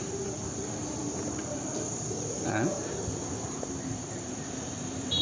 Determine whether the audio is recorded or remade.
remade